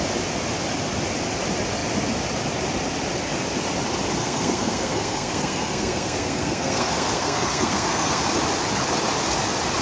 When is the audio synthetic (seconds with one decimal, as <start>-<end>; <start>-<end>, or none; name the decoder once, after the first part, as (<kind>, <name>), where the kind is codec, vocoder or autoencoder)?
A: 4.2-8.2 (codec, SNAC)